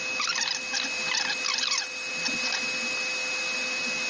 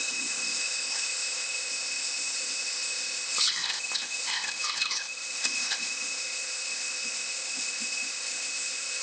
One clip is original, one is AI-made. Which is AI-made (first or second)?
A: second